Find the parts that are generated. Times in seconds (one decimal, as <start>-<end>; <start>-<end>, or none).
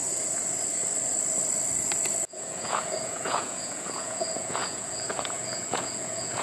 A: 2.3-6.4